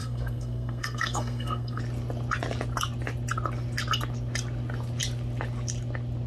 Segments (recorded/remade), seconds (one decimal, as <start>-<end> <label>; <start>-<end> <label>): 0.0-1.8 remade; 1.8-6.3 recorded